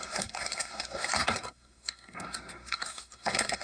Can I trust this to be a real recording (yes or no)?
no